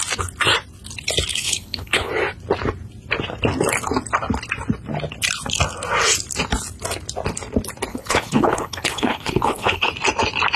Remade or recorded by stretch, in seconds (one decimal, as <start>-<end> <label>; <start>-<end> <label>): 0.0-1.3 recorded; 1.3-2.1 remade; 2.1-7.9 recorded; 7.9-9.9 remade; 9.9-10.6 recorded